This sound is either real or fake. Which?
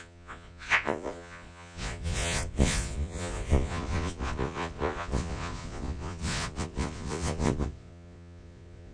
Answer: fake